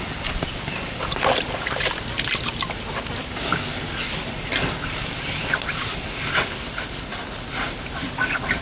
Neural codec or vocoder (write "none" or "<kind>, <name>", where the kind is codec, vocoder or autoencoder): none